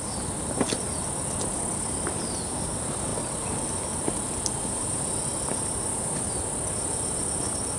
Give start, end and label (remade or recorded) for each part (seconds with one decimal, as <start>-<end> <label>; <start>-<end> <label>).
0.0-7.8 recorded